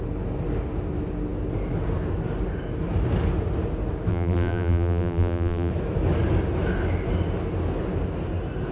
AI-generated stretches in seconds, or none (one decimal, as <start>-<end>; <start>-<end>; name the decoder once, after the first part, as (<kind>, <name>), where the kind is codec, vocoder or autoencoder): 4.1-5.7 (vocoder, BigVGAN v2)